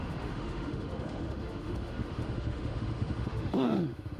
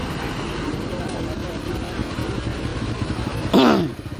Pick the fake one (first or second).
first